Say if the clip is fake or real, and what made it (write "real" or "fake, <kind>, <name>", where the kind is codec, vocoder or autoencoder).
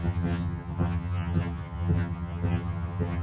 fake, vocoder, HiFi-GAN